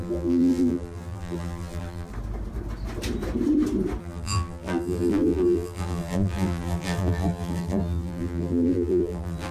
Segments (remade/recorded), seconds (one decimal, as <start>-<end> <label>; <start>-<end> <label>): 0.0-2.1 remade; 2.1-4.0 recorded; 4.0-9.5 remade